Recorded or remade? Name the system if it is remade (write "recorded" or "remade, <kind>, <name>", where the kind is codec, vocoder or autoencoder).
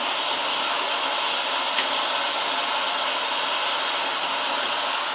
recorded